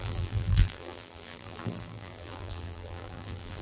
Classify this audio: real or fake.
fake